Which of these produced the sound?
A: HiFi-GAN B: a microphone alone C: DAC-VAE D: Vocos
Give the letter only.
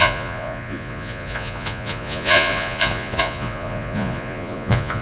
D